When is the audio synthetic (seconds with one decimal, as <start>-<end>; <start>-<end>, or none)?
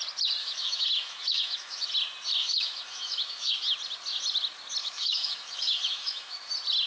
0.4-1.9; 2.4-3.5; 4.8-6.5